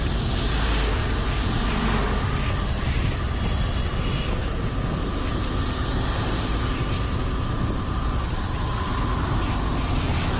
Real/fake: real